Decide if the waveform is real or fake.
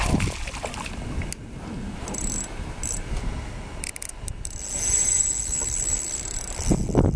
real